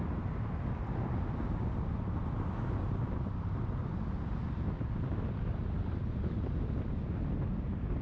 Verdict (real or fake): real